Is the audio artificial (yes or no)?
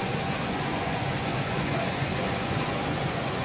yes